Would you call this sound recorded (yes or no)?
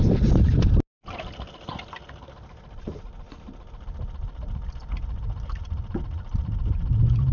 yes